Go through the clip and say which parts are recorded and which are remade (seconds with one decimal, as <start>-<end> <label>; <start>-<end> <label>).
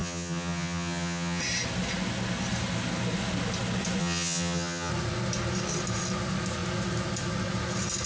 0.0-1.4 remade; 1.4-4.0 recorded; 4.0-4.9 remade; 4.9-8.1 recorded